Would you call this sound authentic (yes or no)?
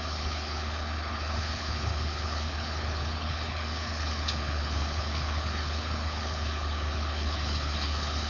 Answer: no